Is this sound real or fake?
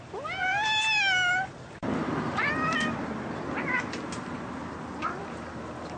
real